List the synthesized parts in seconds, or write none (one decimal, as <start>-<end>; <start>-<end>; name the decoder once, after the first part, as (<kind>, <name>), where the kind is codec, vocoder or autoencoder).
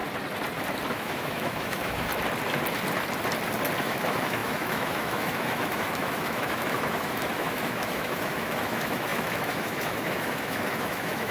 0.9-2.1 (autoencoder, DAC-VAE); 3.8-11.3